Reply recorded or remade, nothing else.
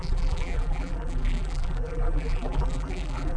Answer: remade